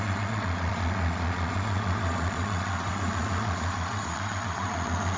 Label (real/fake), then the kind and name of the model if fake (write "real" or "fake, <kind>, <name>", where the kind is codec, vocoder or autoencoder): fake, vocoder, Vocos